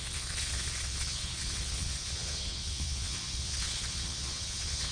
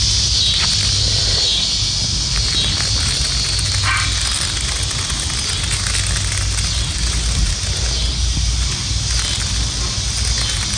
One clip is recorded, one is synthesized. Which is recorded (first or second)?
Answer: second